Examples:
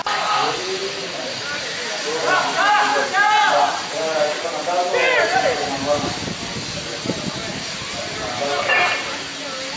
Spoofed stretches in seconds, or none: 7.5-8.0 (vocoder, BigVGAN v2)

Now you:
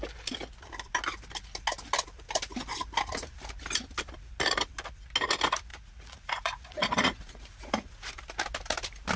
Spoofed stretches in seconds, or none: 5.7-8.1 (vocoder, Vocos)